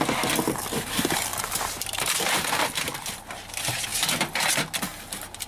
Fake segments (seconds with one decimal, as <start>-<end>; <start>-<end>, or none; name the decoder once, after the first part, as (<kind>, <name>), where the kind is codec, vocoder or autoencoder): 1.3-2.9 (vocoder, BigVGAN v2); 3.9-4.4